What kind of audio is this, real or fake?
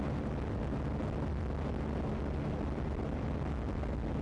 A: real